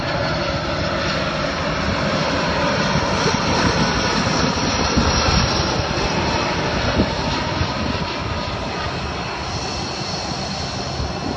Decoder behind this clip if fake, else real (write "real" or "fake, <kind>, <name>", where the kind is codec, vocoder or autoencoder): real